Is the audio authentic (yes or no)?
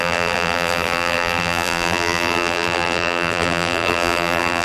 no